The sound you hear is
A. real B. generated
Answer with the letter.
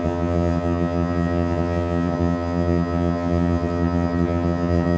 B